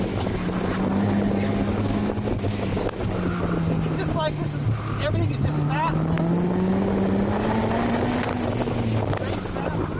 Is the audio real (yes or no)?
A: yes